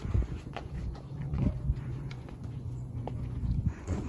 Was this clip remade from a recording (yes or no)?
yes